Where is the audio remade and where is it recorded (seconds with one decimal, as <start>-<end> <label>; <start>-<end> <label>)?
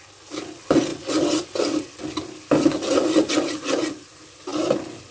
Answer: 0.0-5.1 recorded